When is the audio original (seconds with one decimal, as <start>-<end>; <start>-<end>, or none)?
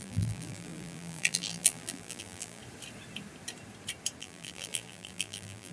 2.6-4.2